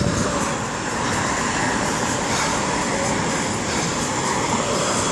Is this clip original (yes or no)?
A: yes